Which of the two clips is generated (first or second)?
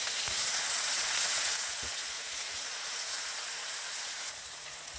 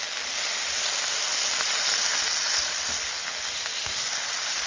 first